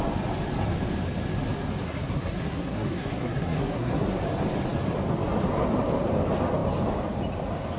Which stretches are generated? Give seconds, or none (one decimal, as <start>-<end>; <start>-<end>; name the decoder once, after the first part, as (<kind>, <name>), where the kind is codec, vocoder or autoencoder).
1.8-4.2 (codec, SNAC)